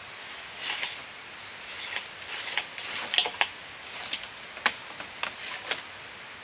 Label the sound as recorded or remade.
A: recorded